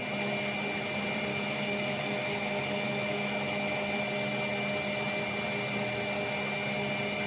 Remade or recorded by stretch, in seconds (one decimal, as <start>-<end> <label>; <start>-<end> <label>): 0.0-1.3 recorded; 1.3-4.0 remade; 4.0-7.3 recorded